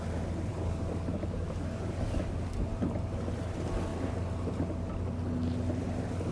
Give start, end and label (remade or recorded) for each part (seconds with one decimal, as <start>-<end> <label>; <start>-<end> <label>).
0.0-0.5 recorded; 0.5-2.7 remade; 2.7-6.3 recorded